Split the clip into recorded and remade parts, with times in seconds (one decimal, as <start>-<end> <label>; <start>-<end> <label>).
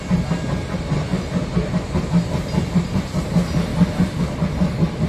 0.0-5.1 recorded